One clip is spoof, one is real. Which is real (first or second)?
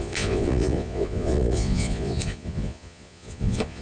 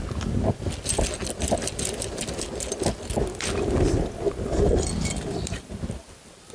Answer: second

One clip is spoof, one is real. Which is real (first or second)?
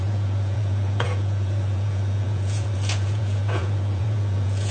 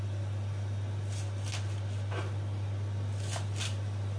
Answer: second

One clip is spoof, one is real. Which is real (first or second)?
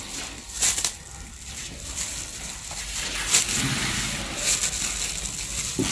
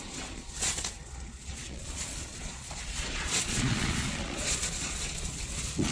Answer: first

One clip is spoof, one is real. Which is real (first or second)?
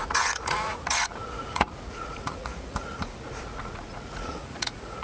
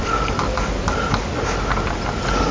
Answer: second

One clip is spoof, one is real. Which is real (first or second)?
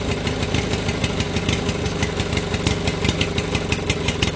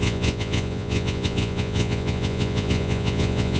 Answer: first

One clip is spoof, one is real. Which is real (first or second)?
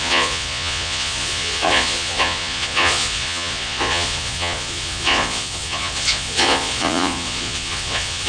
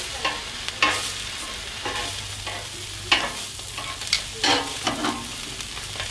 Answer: second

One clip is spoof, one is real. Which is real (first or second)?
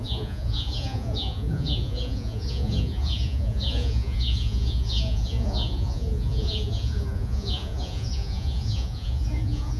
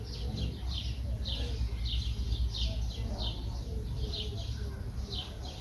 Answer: second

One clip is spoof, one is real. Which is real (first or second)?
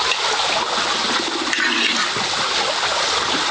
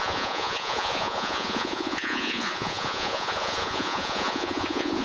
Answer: first